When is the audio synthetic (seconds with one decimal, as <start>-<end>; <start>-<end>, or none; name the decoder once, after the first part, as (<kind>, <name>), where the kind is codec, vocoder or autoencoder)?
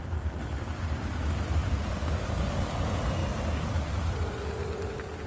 none